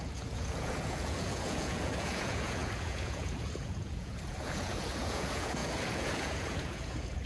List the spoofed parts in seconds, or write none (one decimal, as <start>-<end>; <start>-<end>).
0.0-7.3

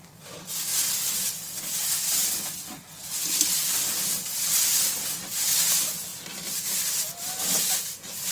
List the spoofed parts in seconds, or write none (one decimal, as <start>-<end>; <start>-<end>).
0.7-1.6; 2.9-4.0; 6.1-6.6

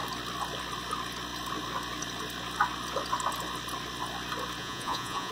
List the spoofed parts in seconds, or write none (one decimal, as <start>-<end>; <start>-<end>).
4.6-5.3

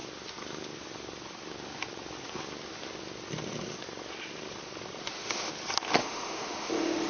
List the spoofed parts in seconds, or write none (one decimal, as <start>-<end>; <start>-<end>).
5.0-5.5; 6.0-7.1

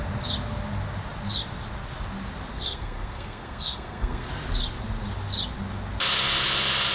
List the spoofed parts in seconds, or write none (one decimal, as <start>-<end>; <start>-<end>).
2.5-4.3

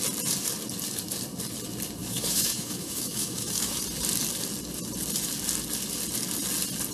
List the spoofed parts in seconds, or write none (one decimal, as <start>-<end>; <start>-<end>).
2.0-3.8

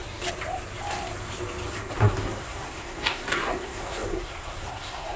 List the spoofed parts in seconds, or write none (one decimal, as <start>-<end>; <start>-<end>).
2.0-5.2